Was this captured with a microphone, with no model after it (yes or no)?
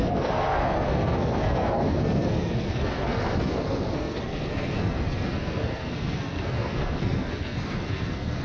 no